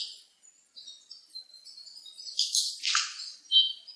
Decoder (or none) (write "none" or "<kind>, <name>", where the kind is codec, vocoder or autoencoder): none